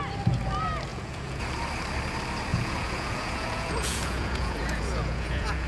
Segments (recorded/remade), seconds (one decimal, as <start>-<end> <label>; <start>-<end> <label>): 0.0-0.9 recorded; 0.9-1.4 remade; 1.4-2.5 recorded; 2.5-5.7 remade